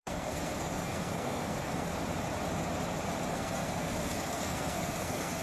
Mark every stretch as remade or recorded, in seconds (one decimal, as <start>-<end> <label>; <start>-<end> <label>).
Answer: 0.0-1.9 remade; 1.9-3.3 recorded; 3.3-5.4 remade